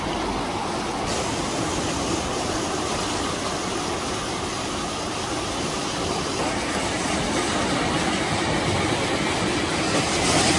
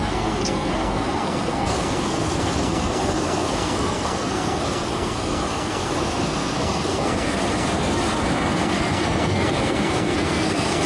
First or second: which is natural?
first